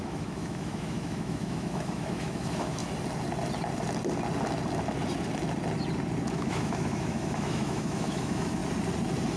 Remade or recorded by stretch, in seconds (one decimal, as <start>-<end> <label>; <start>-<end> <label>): 0.0-2.8 remade; 2.8-6.3 recorded; 6.3-8.6 remade; 8.6-9.4 recorded